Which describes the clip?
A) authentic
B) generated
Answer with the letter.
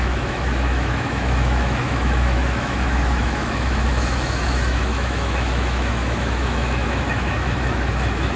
B